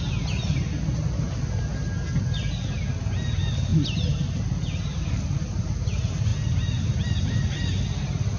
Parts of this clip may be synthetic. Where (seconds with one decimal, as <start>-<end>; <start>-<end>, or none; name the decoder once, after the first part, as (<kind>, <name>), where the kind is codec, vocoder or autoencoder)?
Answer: none